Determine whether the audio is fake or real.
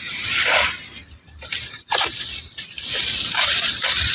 fake